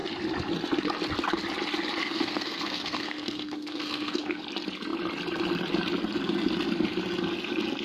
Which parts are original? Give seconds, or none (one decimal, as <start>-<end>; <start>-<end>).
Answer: 0.0-2.0; 4.4-7.8